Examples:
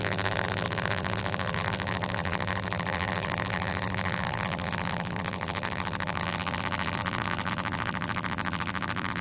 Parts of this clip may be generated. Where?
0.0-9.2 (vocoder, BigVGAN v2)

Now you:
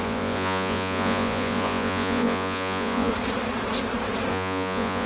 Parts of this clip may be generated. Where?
0.0-3.1 (vocoder, Vocos); 4.3-5.1